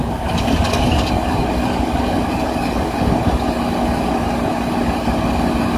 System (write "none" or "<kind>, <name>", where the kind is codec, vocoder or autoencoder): codec, DAC